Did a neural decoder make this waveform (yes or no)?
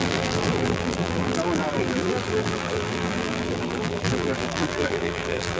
yes